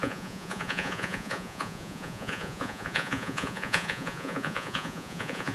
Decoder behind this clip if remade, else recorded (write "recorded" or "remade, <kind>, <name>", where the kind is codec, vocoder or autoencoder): remade, vocoder, Vocos